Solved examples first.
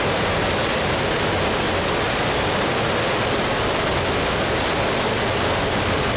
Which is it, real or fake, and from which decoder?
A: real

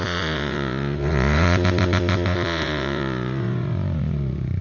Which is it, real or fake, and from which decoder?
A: fake, vocoder, Vocos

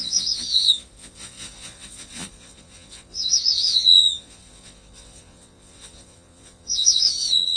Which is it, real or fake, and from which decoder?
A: fake, vocoder, Vocos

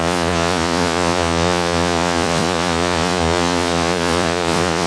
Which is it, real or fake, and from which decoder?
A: fake, vocoder, Vocos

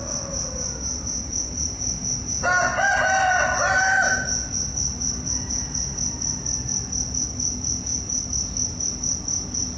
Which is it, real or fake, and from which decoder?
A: real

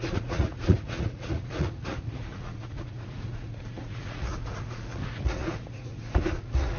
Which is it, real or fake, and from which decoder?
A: fake, vocoder, Vocos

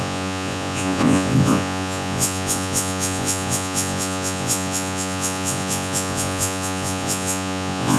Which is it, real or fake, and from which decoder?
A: fake, vocoder, Vocos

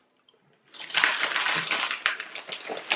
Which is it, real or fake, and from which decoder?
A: real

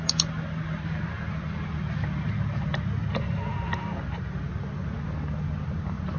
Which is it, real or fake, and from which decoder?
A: real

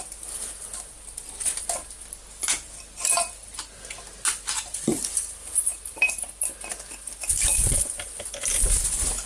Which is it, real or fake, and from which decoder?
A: real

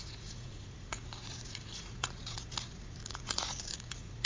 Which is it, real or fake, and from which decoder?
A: fake, vocoder, Vocos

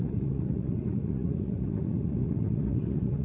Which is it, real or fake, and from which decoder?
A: fake, vocoder, Vocos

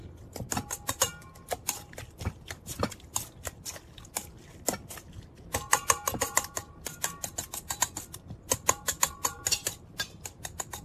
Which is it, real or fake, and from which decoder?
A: real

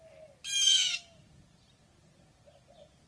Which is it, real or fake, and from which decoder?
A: real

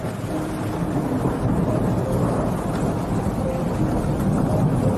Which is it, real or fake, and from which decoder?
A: real